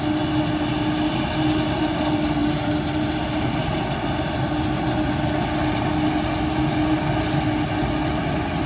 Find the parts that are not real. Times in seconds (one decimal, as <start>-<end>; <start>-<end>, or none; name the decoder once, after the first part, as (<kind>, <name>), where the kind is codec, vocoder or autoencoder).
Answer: none